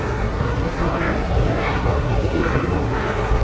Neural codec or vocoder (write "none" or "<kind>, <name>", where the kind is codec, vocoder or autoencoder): codec, SNAC